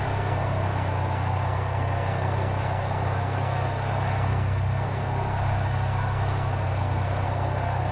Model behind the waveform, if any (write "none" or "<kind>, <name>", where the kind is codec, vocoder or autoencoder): codec, SNAC